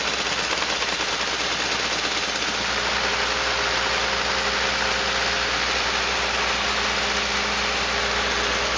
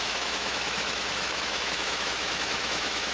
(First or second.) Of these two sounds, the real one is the first